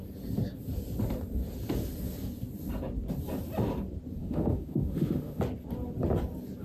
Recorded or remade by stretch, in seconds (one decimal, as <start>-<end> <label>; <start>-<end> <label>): 0.0-4.2 recorded; 4.2-5.4 remade; 5.4-6.6 recorded